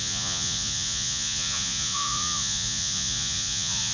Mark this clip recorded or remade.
remade